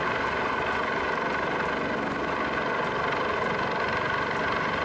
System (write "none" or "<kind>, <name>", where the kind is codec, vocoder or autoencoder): none